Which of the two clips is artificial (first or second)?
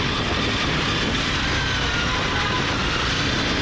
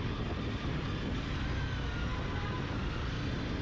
first